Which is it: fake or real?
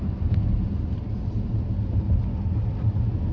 real